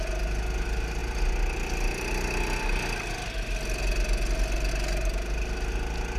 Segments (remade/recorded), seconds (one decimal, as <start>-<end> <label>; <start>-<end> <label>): 0.0-6.2 recorded